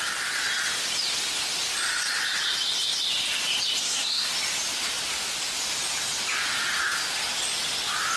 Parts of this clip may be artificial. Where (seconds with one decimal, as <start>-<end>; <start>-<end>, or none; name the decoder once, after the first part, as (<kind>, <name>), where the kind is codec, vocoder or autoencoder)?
3.8-4.3 (codec, SNAC)